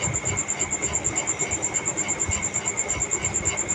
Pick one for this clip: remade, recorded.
recorded